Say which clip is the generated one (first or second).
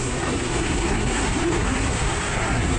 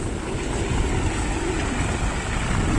first